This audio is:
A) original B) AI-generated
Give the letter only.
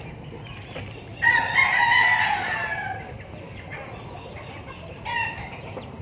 A